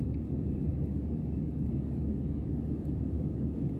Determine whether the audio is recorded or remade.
remade